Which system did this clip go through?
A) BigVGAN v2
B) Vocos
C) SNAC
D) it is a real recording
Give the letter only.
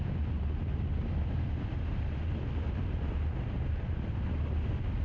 D